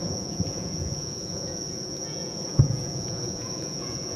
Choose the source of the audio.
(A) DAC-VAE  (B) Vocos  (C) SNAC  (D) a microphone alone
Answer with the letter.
B